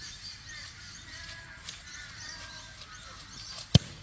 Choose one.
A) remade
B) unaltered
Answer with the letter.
A